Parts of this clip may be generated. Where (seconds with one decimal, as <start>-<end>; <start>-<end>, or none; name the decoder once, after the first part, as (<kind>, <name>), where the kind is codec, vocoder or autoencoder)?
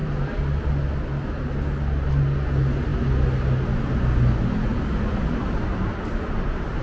0.0-0.7 (vocoder, BigVGAN v2); 4.7-6.8